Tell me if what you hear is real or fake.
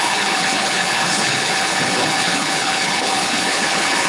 fake